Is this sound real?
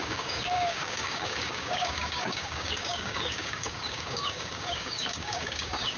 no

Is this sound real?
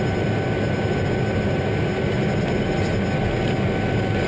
yes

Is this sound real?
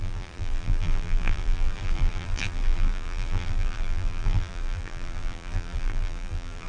no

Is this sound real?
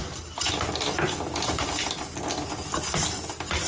yes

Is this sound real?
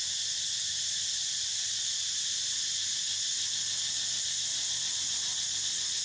yes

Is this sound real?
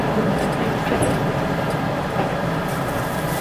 yes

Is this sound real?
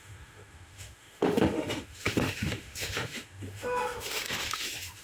no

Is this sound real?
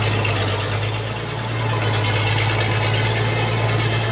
yes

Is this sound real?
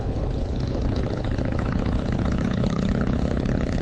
no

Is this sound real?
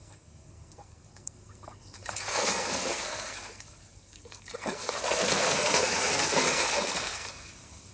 no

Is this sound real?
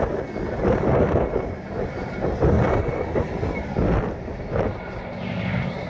yes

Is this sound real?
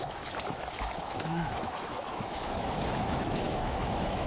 no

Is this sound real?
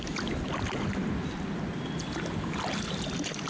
yes